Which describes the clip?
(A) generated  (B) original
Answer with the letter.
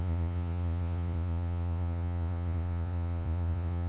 A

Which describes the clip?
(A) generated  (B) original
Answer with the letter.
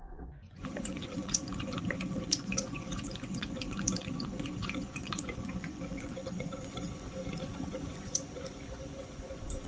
A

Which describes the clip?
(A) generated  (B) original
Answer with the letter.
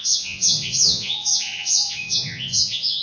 A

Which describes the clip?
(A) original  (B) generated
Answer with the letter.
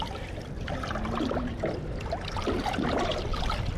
A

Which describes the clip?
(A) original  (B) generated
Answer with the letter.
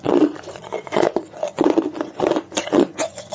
B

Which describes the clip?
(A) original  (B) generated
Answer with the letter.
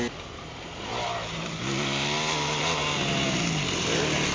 A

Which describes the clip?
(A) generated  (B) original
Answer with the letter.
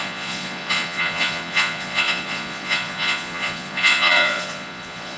A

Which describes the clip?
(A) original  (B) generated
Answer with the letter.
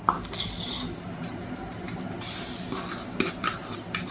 A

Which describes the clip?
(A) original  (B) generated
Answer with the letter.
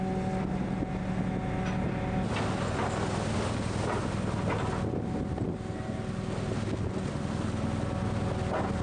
A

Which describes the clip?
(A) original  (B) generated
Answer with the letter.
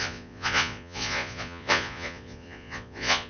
B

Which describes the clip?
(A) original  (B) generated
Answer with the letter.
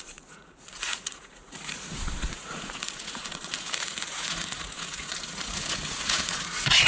B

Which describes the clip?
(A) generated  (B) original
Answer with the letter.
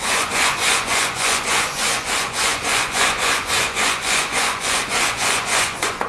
A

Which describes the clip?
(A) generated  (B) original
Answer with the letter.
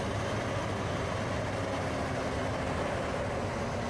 B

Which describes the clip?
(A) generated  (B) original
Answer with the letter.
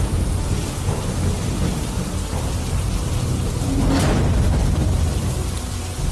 B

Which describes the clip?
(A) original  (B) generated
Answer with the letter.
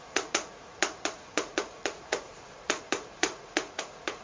B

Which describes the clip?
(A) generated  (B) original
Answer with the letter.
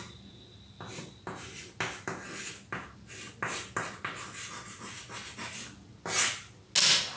B